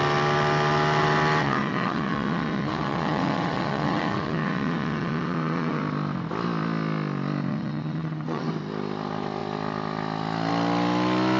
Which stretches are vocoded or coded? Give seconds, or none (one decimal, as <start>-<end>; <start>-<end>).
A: 1.4-5.8; 7.5-8.5